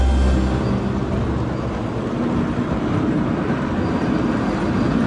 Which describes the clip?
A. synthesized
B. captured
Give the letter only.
B